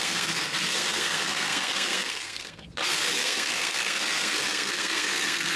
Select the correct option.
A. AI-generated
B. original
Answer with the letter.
A